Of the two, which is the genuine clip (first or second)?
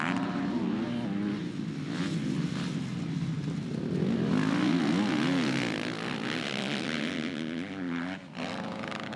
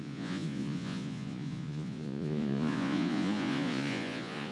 first